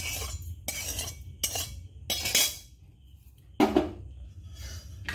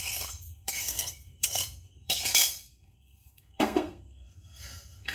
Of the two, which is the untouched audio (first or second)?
first